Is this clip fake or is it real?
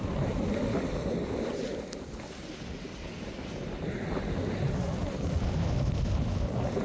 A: real